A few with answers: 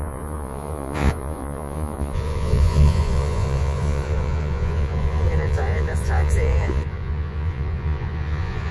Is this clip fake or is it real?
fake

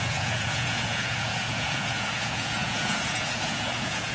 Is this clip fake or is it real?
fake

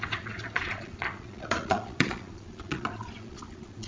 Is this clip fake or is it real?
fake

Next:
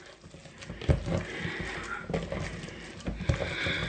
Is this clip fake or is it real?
real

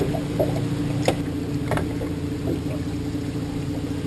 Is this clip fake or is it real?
real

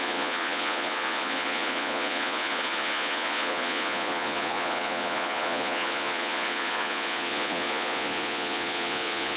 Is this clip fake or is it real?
fake